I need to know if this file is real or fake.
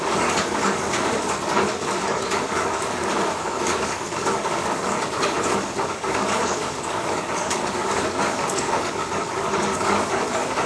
fake